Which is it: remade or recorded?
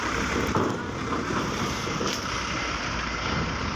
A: remade